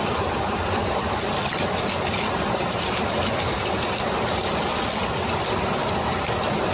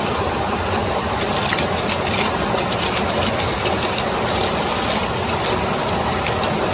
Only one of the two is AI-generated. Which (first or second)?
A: first